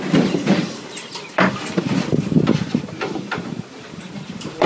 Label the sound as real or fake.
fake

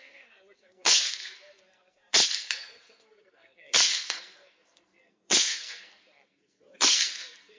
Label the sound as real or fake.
fake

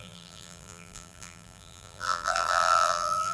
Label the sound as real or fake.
fake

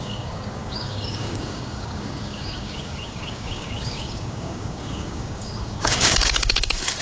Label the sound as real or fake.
fake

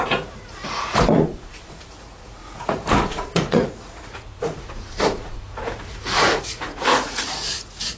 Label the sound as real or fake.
fake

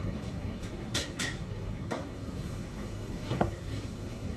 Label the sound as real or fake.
fake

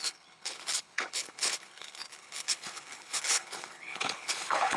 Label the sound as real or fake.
fake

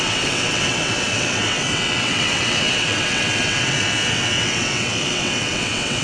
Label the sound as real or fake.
fake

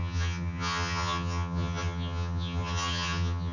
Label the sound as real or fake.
fake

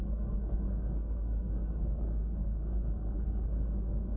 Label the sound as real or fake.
fake